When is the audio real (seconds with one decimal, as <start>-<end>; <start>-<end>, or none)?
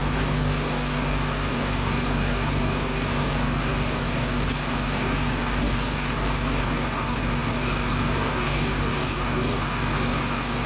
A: none